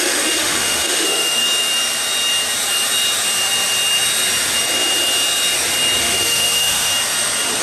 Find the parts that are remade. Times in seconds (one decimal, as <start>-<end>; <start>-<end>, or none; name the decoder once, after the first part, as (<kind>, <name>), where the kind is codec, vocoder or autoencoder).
0.0-1.4 (autoencoder, DAC-VAE); 6.0-6.9